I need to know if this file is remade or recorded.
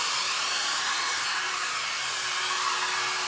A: recorded